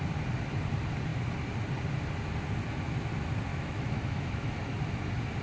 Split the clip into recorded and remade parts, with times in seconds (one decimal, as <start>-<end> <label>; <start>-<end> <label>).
0.0-3.5 recorded; 3.5-4.5 remade; 4.5-5.4 recorded